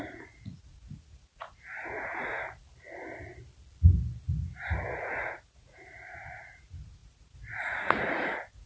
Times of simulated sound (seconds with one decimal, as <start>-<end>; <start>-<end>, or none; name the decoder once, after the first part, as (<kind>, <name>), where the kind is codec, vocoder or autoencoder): 0.0-2.3 (vocoder, Vocos); 5.0-8.7